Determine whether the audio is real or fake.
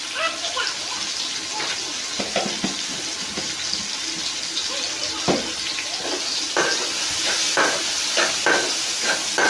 real